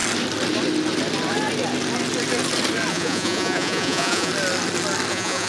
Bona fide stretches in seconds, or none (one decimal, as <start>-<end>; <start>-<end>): 0.0-2.9; 4.3-5.1